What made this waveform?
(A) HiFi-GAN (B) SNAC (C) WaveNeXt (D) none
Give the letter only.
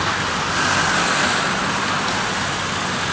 D